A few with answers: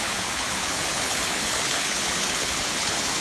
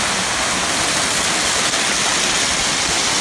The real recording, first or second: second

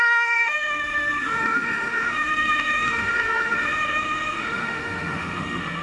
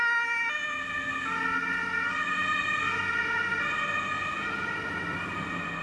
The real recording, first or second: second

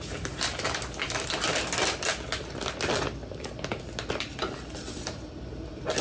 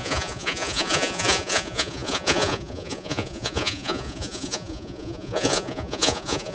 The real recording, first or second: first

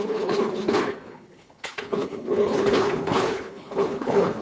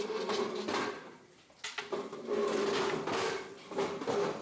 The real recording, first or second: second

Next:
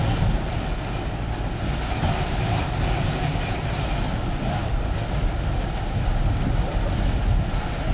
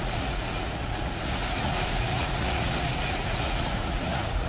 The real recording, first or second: first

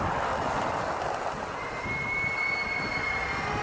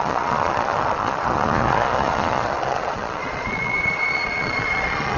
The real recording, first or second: first